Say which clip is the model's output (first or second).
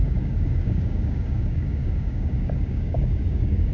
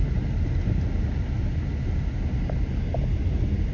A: first